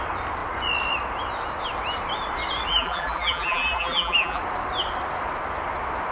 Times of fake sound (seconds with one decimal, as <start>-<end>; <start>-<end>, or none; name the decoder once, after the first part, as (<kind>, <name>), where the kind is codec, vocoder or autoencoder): 2.7-4.4 (vocoder, BigVGAN v2)